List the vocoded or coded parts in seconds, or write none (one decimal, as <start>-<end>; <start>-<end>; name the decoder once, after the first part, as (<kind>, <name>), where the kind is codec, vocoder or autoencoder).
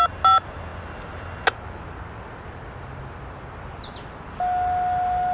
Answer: none